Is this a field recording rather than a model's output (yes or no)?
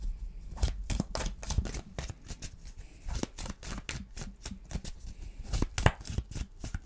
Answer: yes